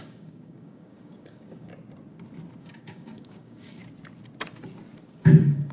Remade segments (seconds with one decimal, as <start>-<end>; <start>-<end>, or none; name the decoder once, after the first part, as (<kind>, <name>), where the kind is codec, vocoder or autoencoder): 0.0-1.7 (codec, DAC); 2.6-3.8; 5.1-5.7